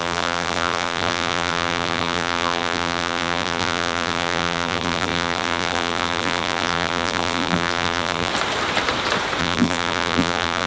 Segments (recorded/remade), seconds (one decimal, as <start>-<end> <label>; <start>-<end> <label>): 0.0-8.3 remade; 8.3-9.4 recorded; 9.4-10.7 remade